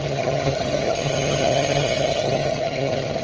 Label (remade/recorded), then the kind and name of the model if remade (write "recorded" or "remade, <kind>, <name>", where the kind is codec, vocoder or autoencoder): remade, vocoder, HiFi-GAN